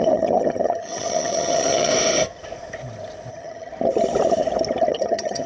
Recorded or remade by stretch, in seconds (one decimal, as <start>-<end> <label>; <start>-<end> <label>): 0.0-1.9 remade; 1.9-3.3 recorded; 3.3-3.7 remade; 3.7-4.9 recorded; 4.9-5.5 remade